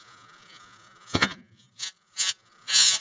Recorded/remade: remade